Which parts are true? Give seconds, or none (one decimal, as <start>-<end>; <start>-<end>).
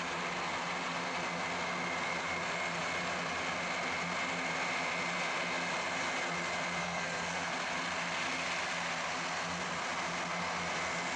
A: 0.0-6.8; 7.5-11.2